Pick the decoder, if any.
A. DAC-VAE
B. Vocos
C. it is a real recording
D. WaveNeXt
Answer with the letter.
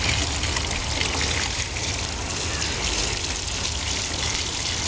C